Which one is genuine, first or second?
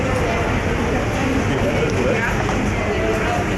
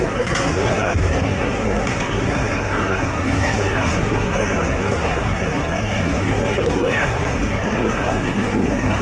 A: first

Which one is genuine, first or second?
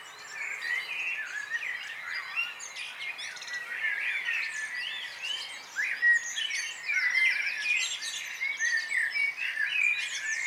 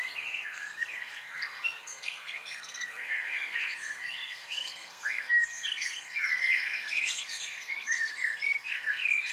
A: first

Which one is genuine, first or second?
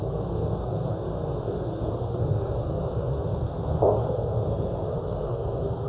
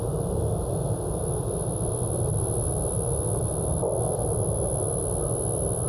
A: second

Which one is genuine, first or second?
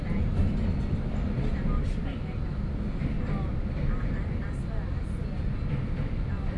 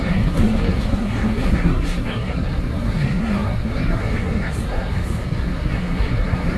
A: first